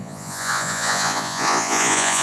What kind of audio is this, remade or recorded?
remade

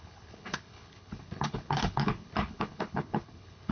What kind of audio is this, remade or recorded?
remade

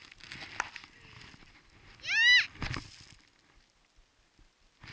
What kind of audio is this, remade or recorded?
recorded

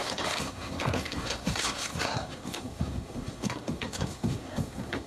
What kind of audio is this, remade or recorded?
remade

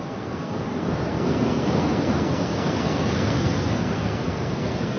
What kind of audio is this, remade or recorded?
remade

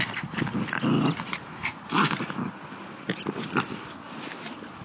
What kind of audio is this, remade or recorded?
recorded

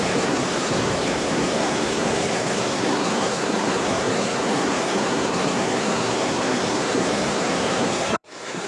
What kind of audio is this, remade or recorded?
remade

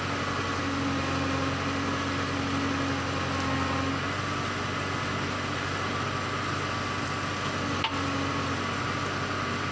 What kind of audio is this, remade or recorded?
recorded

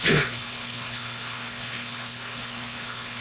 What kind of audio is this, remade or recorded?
remade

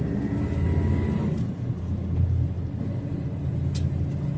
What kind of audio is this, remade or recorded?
recorded